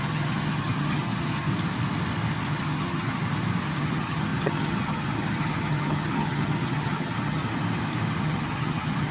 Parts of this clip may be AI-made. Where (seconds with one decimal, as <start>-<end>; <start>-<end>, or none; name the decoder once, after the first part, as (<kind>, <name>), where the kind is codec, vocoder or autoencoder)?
0.0-1.5 (vocoder, HiFi-GAN); 2.5-3.2; 3.8-7.4; 8.2-9.1